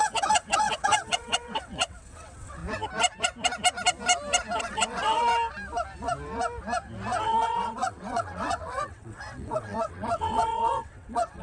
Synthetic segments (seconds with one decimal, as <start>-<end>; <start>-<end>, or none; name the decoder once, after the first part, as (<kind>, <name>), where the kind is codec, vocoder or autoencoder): 0.0-2.6 (vocoder, WaveNeXt); 4.6-5.3; 7.2-11.4